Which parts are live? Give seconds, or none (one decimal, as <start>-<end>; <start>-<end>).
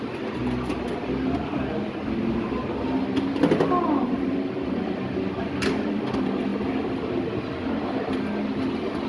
0.0-9.1